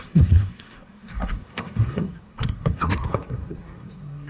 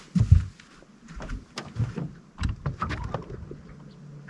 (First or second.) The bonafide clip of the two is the second